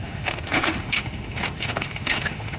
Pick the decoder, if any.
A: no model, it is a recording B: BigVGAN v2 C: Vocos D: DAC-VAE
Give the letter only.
D